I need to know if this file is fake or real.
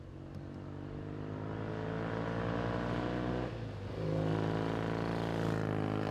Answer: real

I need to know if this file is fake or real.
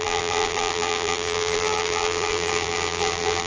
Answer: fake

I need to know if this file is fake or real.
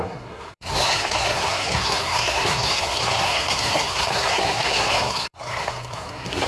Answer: fake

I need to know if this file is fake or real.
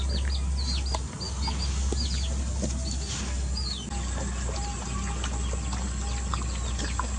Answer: real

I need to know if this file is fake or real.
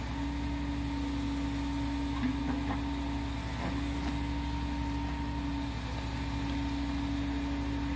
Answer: real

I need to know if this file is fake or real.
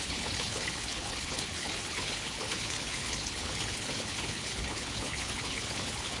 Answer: fake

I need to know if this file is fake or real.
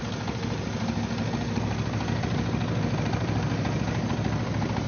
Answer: real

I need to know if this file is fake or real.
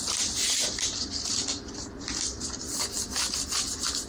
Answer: real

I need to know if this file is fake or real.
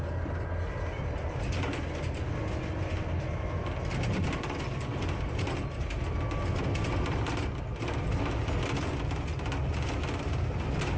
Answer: real